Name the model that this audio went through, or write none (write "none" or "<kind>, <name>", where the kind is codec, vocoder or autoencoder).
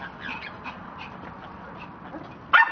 none